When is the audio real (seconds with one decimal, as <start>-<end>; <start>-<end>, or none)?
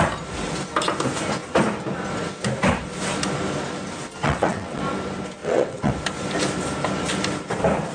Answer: 0.0-4.2; 4.8-5.4; 5.9-7.9